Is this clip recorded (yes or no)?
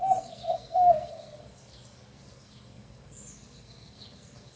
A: no